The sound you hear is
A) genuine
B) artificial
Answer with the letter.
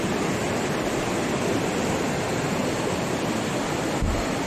A